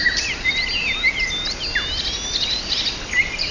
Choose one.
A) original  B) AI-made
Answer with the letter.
A